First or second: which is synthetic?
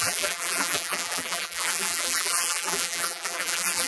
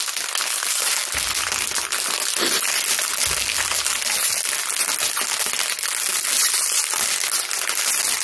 first